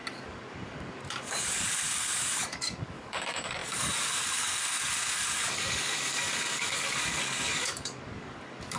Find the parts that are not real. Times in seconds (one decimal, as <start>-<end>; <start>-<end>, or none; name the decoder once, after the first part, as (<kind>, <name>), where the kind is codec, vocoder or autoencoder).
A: 0.0-8.8 (codec, DAC)